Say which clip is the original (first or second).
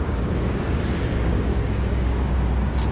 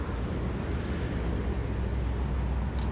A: second